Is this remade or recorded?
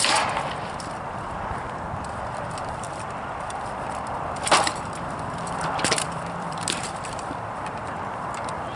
remade